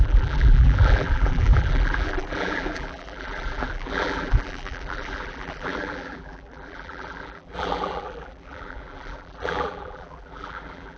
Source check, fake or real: fake